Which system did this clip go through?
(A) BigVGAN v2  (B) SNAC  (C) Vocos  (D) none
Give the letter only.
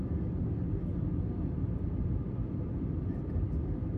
A